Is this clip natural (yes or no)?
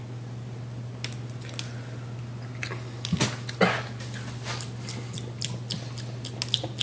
yes